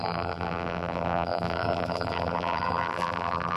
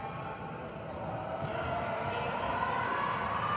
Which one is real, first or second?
second